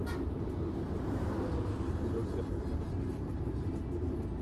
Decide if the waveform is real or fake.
real